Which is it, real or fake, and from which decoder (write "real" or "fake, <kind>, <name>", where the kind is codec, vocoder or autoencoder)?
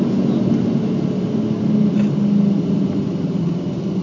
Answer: real